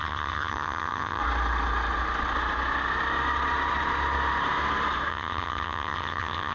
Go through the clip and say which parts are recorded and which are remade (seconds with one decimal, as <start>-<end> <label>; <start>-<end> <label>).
0.0-1.2 remade; 1.2-5.1 recorded; 5.1-6.5 remade